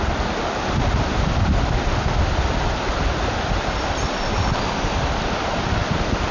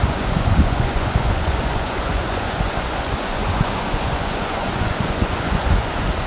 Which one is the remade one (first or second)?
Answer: second